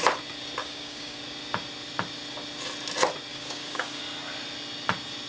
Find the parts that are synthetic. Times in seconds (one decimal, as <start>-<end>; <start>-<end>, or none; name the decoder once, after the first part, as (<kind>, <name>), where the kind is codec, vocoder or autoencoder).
0.6-1.2 (codec, DAC); 3.3-4.0